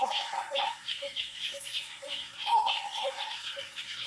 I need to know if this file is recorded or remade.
remade